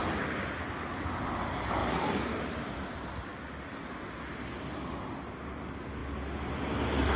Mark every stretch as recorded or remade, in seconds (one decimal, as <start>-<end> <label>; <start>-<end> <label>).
0.0-7.2 recorded